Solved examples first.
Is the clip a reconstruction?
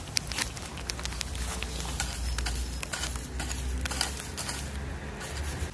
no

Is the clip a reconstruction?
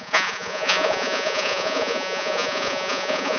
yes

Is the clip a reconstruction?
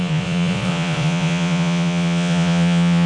yes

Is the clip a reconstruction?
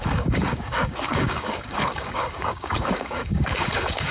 yes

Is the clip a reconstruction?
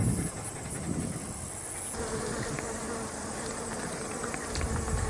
no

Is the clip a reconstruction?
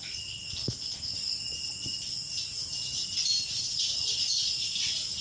no